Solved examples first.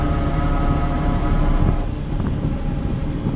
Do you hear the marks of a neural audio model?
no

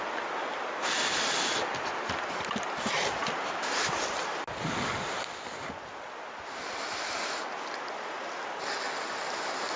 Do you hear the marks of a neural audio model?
no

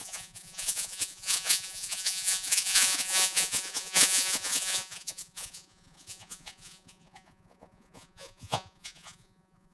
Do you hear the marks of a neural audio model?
yes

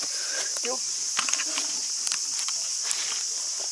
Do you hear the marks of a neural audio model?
no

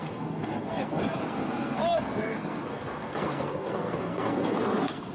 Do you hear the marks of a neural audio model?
yes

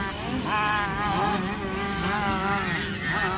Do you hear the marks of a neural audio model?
no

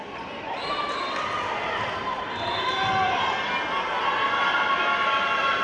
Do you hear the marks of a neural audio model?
no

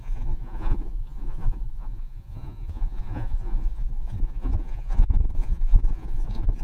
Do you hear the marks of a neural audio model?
yes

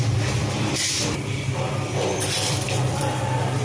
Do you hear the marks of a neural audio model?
yes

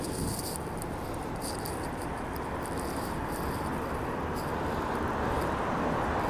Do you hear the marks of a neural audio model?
yes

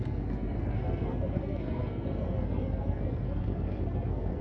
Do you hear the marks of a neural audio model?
yes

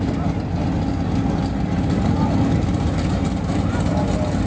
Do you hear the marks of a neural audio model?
no